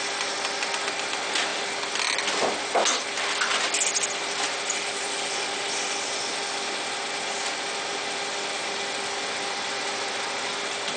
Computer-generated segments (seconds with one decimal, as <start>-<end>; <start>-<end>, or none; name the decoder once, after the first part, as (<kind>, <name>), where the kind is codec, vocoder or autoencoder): none